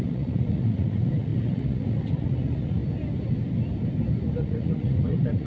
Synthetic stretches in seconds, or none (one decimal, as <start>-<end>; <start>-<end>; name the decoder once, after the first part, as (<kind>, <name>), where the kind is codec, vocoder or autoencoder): 0.0-2.8 (vocoder, Vocos); 4.4-5.5

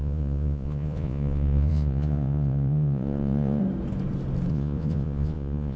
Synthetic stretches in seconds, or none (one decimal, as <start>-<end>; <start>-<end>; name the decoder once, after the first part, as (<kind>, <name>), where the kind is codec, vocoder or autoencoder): 0.0-3.6 (vocoder, Vocos); 4.5-5.8

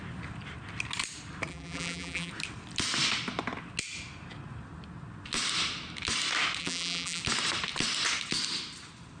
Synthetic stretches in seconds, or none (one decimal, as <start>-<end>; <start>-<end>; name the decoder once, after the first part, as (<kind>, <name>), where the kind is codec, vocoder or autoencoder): 1.5-2.3 (vocoder, BigVGAN v2); 6.6-7.2

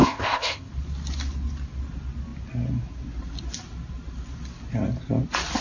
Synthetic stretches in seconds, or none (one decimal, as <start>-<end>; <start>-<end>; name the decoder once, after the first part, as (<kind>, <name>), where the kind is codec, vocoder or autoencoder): 0.0-0.7 (codec, ZipCodec)